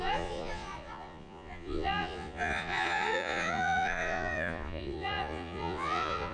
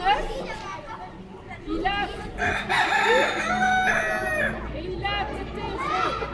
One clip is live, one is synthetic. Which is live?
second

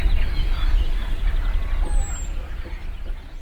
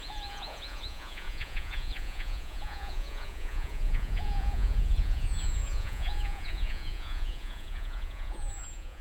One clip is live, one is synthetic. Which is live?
first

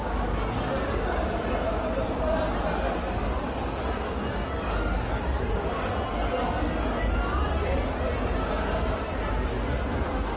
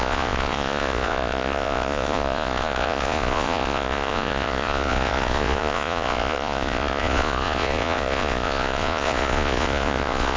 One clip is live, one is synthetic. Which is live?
first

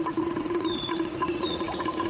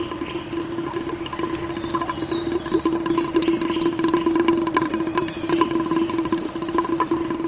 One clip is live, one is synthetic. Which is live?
second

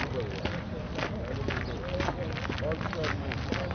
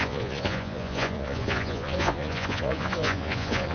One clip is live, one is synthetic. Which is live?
first